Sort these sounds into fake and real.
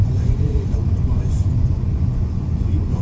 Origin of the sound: fake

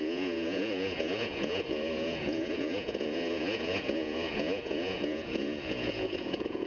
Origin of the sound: fake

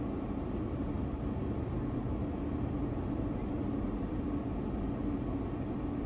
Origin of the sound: real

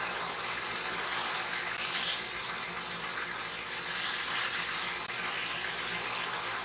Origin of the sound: real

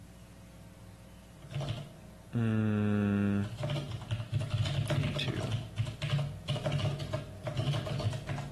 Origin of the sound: real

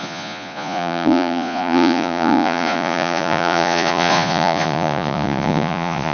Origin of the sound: fake